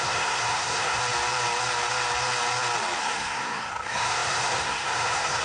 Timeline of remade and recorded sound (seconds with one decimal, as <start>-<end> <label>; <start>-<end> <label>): 0.0-1.0 remade; 1.0-3.0 recorded; 3.0-5.4 remade